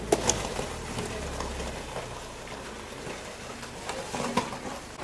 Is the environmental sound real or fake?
real